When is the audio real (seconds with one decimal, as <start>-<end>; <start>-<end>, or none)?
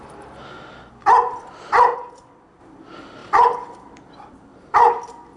0.0-5.4